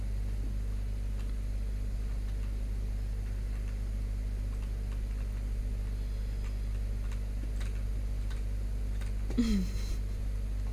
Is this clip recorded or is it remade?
recorded